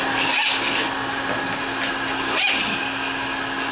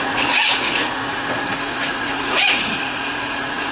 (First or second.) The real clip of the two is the first